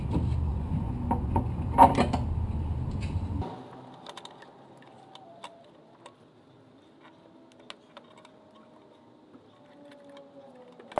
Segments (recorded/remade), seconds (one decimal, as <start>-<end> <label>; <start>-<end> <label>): 0.0-0.5 recorded; 0.5-1.7 remade; 1.7-11.0 recorded